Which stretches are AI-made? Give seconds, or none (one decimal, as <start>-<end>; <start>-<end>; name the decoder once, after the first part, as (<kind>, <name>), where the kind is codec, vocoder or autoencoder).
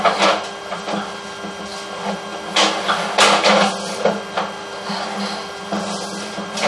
none